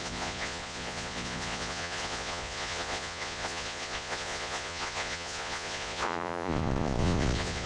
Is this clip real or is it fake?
fake